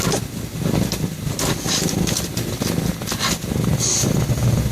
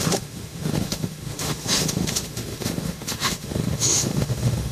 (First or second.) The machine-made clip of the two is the second